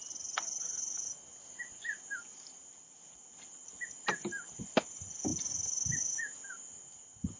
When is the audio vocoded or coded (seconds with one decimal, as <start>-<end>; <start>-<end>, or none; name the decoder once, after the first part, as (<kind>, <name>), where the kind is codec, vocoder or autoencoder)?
none